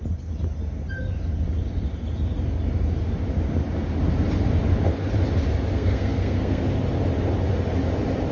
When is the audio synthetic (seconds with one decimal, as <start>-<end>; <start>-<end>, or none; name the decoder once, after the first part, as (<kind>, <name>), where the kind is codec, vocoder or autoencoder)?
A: 5.7-6.6 (codec, SNAC)

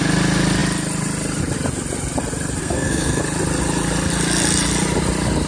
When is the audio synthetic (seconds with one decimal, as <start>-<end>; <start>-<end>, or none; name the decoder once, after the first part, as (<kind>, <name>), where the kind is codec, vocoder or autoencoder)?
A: 2.6-3.2 (codec, SNAC)

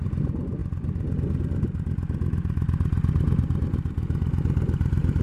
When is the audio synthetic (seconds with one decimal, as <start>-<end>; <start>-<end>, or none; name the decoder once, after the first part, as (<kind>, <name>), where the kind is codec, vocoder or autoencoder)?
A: none

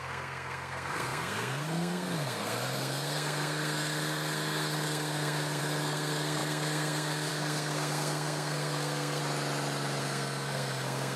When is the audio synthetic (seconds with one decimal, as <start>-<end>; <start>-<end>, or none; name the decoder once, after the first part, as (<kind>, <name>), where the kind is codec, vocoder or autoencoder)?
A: 0.0-9.2 (codec, SNAC); 10.0-11.2

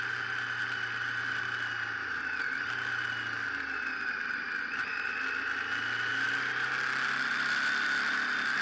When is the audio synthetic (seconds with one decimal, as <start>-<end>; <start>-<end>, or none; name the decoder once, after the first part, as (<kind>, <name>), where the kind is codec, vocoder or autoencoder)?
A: none

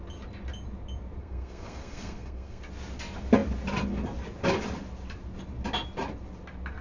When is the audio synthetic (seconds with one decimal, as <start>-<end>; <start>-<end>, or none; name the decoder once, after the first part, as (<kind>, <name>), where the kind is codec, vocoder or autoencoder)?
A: 1.2-2.6 (codec, SNAC)

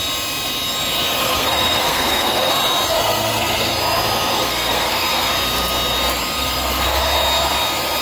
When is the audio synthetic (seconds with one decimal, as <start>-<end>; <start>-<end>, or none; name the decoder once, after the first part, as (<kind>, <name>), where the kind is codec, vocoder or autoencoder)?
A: 1.2-2.5 (codec, SNAC); 3.0-3.7; 4.4-5.3; 6.4-7.0

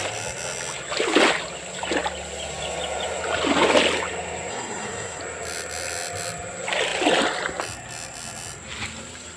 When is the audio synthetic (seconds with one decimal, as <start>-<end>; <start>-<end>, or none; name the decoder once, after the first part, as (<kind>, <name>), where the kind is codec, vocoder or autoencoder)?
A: 4.5-5.2 (codec, SNAC)